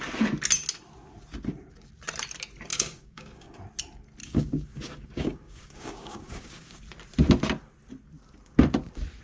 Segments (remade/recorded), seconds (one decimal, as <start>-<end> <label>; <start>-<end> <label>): 0.0-2.7 recorded; 2.7-3.6 remade; 3.6-4.2 recorded; 4.2-6.8 remade; 6.8-9.2 recorded